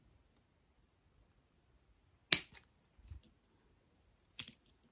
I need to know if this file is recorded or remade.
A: recorded